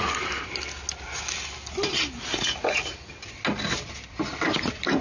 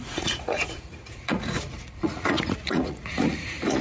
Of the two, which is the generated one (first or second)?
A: second